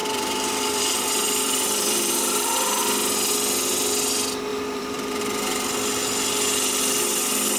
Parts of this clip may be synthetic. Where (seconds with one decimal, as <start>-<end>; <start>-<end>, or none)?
0.0-2.8; 4.5-5.2